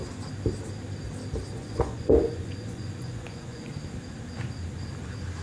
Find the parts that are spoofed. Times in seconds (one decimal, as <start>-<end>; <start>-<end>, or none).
1.5-3.7

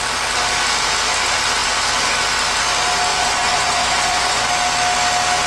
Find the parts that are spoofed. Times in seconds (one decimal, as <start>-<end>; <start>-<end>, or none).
3.1-4.5

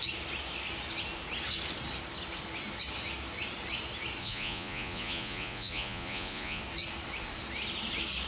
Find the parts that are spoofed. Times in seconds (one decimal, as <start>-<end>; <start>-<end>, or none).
4.2-6.6

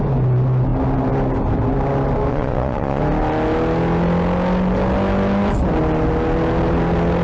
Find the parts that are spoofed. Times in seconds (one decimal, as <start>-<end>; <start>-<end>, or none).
2.3-3.0

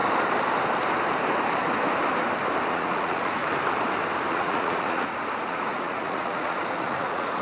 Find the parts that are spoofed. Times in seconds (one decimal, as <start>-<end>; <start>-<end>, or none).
2.7-3.4; 4.3-7.4

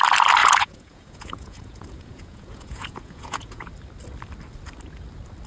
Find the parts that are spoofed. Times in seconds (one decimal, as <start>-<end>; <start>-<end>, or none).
0.4-3.7